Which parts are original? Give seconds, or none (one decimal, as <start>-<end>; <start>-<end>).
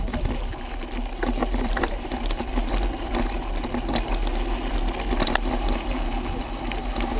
0.0-1.4; 3.1-7.2